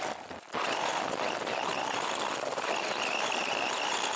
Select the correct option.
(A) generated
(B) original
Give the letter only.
B